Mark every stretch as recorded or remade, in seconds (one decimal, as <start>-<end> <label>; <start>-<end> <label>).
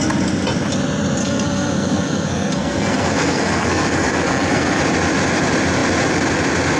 0.0-1.2 recorded; 1.2-4.8 remade; 4.8-6.8 recorded